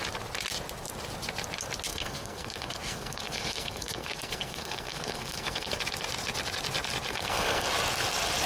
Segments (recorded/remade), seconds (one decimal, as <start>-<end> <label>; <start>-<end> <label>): 0.0-1.9 recorded; 1.9-5.8 remade; 5.8-7.1 recorded; 7.1-7.7 remade; 7.7-8.5 recorded